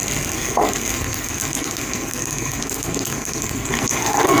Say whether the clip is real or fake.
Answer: fake